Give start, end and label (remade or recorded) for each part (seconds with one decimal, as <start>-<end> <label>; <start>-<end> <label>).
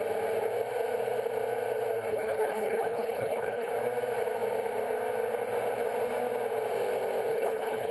0.0-2.1 recorded; 2.1-3.7 remade; 3.7-7.3 recorded; 7.3-7.9 remade